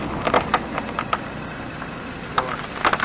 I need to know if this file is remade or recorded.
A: recorded